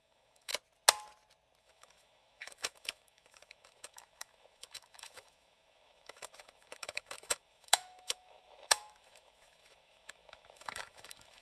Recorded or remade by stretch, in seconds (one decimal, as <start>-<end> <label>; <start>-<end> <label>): 0.0-0.5 remade; 0.5-1.6 recorded; 1.6-11.4 remade

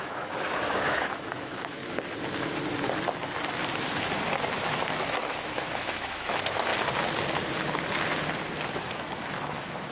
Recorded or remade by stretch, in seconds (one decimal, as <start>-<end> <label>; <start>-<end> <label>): 0.0-1.8 remade; 1.8-4.9 recorded; 4.9-6.7 remade; 6.7-8.7 recorded; 8.7-9.9 remade